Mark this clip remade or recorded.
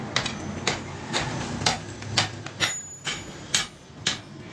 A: recorded